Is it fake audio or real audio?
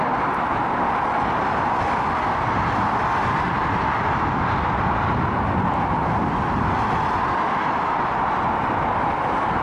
real